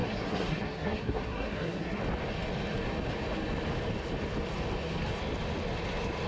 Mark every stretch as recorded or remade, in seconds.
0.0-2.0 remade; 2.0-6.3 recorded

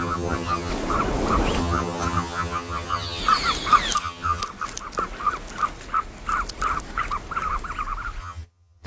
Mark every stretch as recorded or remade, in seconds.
0.0-0.7 remade; 0.7-1.6 recorded; 1.6-3.2 remade; 3.2-4.0 recorded; 4.0-4.4 remade; 4.4-8.2 recorded; 8.2-8.9 remade

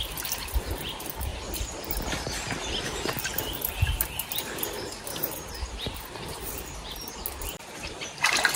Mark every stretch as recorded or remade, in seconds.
0.0-1.3 recorded; 1.3-1.9 remade; 1.9-3.3 recorded; 3.3-7.1 remade; 7.1-8.6 recorded

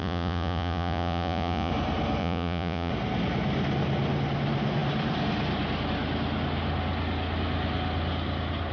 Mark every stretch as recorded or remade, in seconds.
0.0-1.7 remade; 1.7-2.2 recorded; 2.2-2.9 remade; 2.9-8.7 recorded